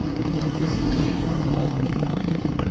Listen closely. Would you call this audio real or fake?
fake